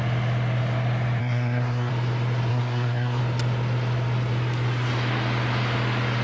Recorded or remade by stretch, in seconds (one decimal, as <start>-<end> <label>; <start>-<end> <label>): 0.0-1.2 recorded; 1.2-1.9 remade; 1.9-2.5 recorded; 2.5-3.2 remade; 3.2-6.2 recorded